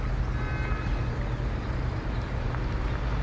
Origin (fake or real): real